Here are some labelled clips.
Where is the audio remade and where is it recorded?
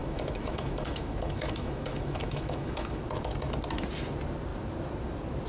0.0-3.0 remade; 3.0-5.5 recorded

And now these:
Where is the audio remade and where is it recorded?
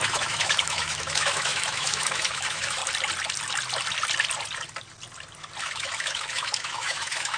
0.0-2.8 remade; 2.8-5.6 recorded; 5.6-7.4 remade